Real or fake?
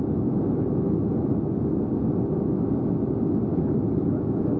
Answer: real